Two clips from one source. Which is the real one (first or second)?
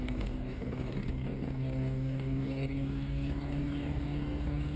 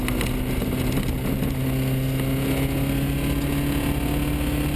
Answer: second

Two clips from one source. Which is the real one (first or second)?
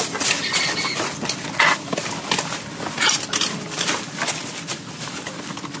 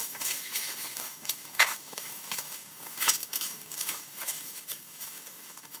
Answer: first